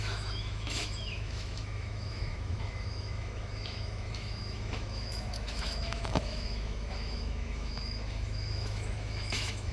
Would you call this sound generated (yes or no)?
yes